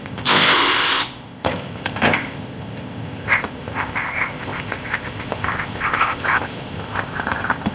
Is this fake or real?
fake